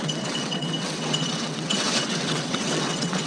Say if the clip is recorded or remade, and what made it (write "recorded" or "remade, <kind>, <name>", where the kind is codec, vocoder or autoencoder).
remade, vocoder, WaveNeXt